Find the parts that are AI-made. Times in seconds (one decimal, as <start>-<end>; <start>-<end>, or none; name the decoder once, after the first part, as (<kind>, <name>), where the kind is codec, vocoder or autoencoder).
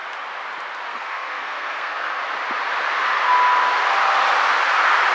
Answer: 0.9-2.2 (codec, SNAC)